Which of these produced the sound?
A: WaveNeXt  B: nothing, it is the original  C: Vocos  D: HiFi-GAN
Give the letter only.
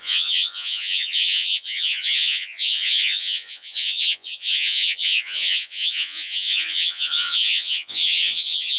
C